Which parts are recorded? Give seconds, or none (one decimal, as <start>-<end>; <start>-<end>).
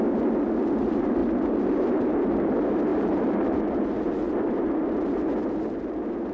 0.0-2.9; 3.8-6.3